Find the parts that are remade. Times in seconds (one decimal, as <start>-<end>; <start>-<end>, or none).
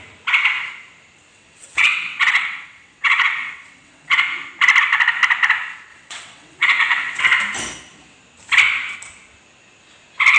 1.3-4.2; 5.9-7.2